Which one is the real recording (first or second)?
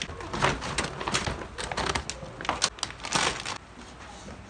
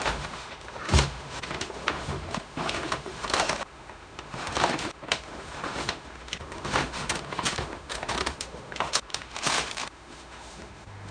first